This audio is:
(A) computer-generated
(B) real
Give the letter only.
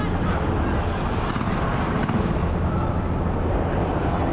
B